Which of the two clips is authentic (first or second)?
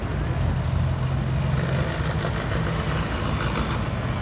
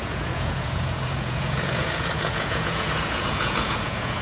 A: first